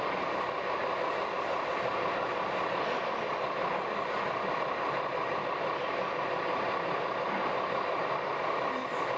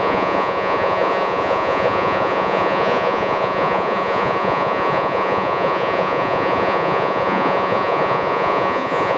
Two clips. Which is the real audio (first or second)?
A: first